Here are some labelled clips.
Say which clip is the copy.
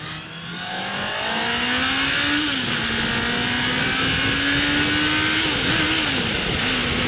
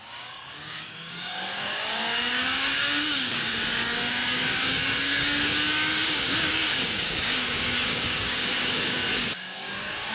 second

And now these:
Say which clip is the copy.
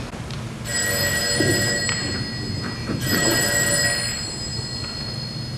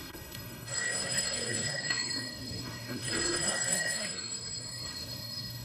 second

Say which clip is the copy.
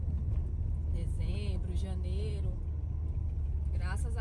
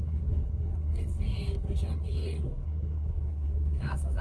second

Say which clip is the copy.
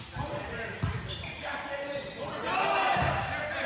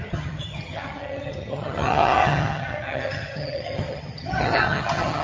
second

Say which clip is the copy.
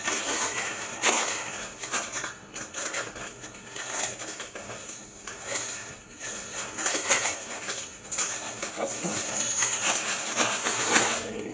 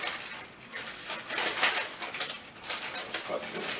first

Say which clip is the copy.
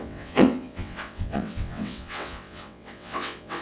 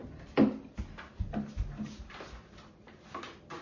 first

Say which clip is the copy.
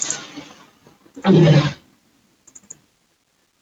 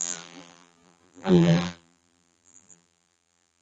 second